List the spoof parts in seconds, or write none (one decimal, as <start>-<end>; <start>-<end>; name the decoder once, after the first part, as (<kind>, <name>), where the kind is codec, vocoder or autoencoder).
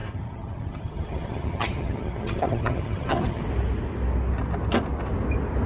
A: 0.0-3.4 (vocoder, HiFi-GAN)